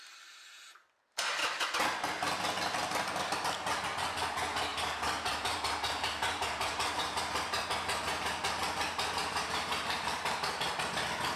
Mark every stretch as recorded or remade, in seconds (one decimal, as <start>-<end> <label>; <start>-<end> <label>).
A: 0.0-4.7 recorded; 4.7-7.7 remade; 7.7-9.2 recorded; 9.2-10.5 remade; 10.5-11.4 recorded